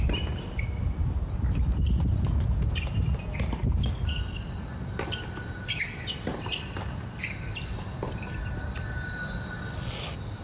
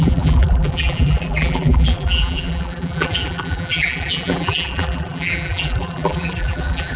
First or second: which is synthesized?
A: second